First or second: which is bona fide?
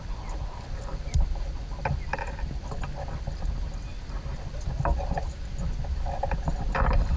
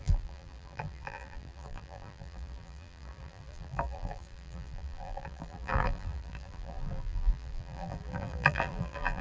first